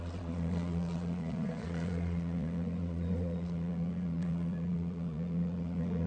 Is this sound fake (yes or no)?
yes